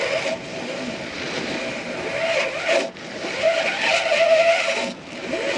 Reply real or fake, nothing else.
real